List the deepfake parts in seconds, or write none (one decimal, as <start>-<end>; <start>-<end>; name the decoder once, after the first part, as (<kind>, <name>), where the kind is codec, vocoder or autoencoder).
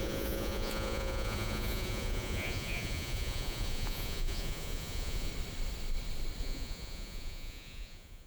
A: 0.0-5.3 (vocoder, Vocos); 6.4-8.3